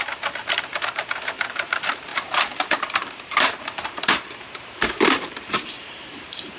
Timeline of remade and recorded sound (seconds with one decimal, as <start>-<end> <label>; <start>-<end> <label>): 0.0-6.6 remade